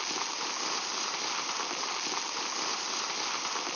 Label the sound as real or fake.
real